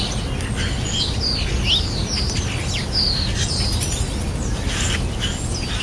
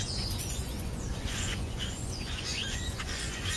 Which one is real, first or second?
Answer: first